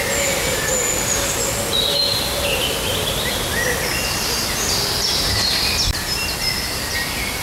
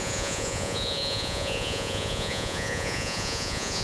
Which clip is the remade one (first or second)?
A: second